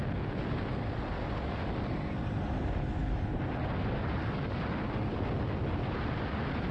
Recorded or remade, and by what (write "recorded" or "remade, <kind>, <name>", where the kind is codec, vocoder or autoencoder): recorded